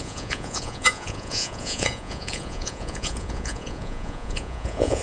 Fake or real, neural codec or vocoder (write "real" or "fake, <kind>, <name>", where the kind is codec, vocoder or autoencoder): fake, vocoder, Vocos